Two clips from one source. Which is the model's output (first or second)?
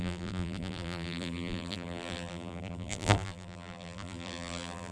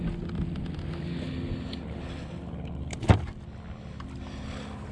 first